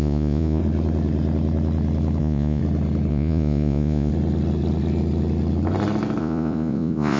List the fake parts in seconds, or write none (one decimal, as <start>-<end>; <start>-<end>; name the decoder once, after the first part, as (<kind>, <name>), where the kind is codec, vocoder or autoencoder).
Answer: 0.0-0.6 (vocoder, Vocos); 2.2-2.6; 3.1-4.1; 6.2-7.2

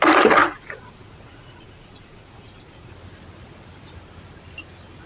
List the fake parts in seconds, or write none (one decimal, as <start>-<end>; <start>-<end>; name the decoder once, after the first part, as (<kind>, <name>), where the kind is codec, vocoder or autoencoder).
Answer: 0.4-2.9 (vocoder, Vocos)

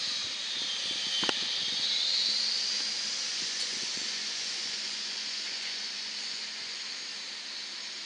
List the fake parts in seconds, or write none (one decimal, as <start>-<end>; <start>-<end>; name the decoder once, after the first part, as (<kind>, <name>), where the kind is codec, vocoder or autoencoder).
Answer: 3.3-6.8 (vocoder, Vocos)

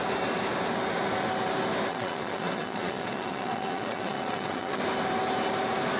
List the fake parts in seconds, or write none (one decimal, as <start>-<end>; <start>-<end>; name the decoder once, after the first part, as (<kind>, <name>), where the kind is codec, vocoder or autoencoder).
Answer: 1.9-4.8 (vocoder, Vocos)

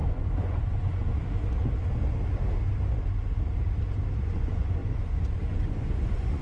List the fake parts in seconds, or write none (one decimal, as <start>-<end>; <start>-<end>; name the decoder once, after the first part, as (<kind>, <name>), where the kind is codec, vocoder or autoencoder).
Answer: 0.0-1.1 (vocoder, Vocos); 4.2-6.4

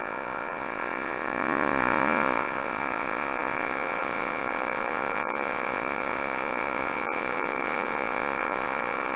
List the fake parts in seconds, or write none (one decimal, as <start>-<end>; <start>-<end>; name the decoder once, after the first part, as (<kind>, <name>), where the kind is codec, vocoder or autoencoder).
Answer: 0.0-9.2 (vocoder, Vocos)

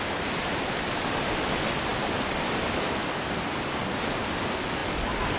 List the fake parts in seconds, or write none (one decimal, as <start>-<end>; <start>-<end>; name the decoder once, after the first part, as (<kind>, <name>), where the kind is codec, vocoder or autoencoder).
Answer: none

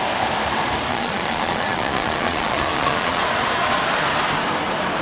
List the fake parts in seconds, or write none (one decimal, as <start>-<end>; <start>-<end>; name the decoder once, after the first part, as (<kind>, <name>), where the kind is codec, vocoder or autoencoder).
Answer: 0.9-3.2 (vocoder, Vocos)